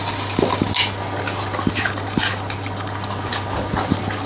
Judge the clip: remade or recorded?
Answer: recorded